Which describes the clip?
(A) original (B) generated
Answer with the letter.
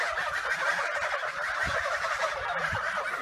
B